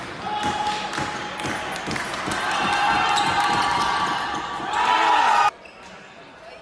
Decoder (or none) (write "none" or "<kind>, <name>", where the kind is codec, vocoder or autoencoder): none